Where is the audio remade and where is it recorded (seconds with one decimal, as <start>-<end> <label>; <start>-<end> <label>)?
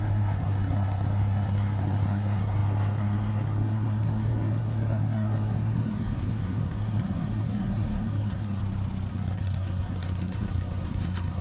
0.0-8.6 remade; 8.6-9.1 recorded; 9.1-11.4 remade